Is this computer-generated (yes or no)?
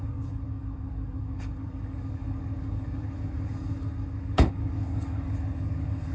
yes